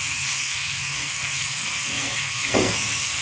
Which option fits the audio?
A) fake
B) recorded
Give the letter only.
A